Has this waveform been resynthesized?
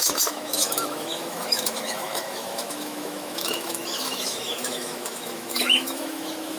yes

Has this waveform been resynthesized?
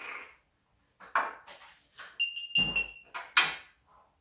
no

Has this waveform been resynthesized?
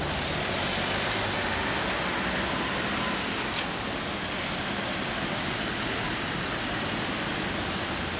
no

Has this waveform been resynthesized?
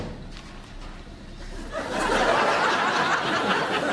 no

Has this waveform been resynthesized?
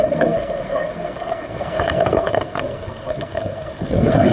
yes